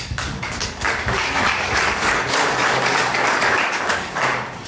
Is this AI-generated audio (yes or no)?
yes